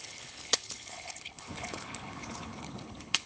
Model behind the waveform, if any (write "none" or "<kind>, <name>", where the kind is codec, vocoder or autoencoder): codec, HILCodec